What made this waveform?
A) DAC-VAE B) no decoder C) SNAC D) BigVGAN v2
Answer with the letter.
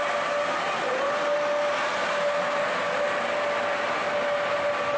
B